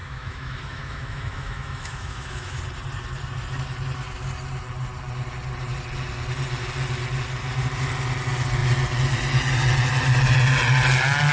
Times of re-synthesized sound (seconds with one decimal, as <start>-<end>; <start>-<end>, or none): 0.0-2.6